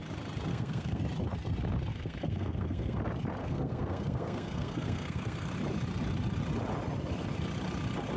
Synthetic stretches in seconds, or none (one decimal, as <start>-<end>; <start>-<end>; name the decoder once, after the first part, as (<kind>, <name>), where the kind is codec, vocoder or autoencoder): 0.5-1.0 (codec, SNAC); 1.9-3.0; 3.4-5.5